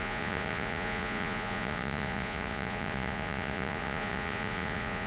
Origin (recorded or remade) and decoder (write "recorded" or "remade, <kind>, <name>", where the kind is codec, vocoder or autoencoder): remade, vocoder, Vocos